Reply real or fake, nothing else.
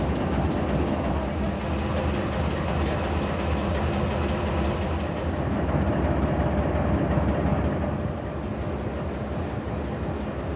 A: real